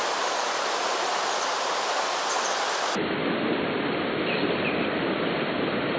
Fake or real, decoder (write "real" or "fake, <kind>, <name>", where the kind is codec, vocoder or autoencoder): fake, vocoder, BigVGAN v2